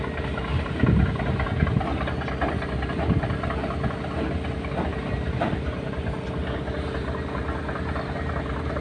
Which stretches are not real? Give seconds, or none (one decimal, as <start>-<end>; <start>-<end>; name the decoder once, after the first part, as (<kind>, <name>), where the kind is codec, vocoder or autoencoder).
0.5-1.0 (vocoder, BigVGAN v2); 4.9-5.5